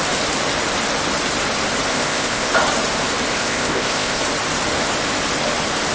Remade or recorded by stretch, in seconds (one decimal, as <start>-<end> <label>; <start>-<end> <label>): 0.0-1.9 recorded; 1.9-2.5 remade; 2.5-3.3 recorded; 3.3-4.2 remade; 4.2-5.9 recorded